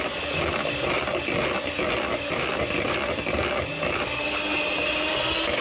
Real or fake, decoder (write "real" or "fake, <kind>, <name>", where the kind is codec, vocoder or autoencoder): real